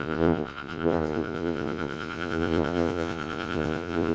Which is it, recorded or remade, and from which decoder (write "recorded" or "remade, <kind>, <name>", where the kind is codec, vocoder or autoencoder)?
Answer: remade, vocoder, Vocos